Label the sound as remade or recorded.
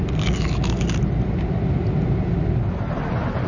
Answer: recorded